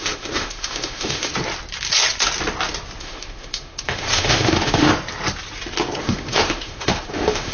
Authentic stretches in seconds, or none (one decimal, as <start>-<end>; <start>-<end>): 1.3-3.0; 4.9-6.0